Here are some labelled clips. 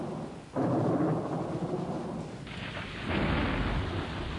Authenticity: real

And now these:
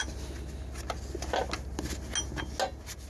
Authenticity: real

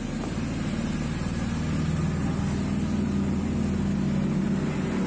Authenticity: real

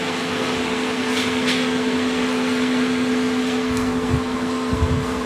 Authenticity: fake